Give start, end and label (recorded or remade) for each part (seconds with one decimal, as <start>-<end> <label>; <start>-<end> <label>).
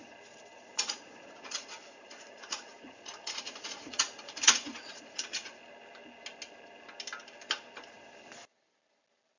0.0-0.5 recorded; 0.5-5.6 remade; 5.6-9.4 recorded